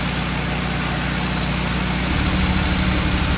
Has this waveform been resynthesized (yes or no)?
no